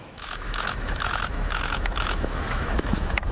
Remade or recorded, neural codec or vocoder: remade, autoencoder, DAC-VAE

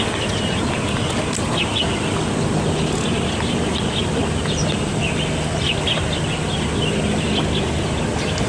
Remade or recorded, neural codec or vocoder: recorded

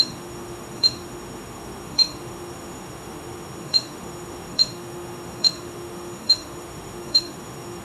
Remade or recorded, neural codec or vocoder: remade, autoencoder, DAC-VAE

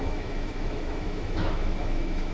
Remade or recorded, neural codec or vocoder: remade, autoencoder, DAC-VAE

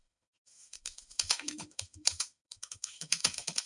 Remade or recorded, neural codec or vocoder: remade, autoencoder, DAC-VAE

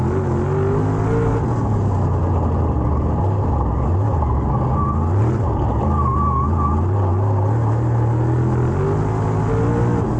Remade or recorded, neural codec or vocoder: recorded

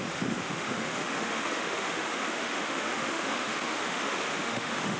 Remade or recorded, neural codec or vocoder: remade, autoencoder, DAC-VAE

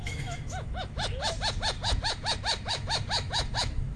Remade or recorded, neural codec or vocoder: remade, autoencoder, DAC-VAE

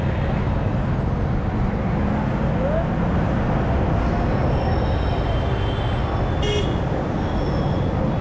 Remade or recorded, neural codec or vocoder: recorded